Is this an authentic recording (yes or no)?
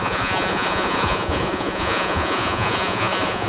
no